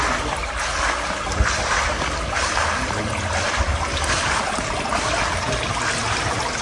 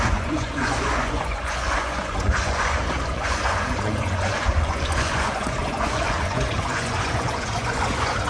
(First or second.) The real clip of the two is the first